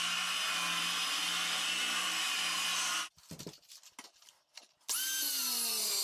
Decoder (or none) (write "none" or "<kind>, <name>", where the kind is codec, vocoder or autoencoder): none